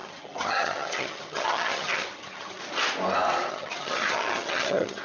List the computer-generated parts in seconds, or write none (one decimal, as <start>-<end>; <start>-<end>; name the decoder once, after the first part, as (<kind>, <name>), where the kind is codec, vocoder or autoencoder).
0.0-2.6 (vocoder, HiFi-GAN); 3.5-5.0